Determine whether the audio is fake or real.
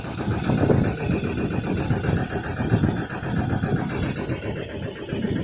real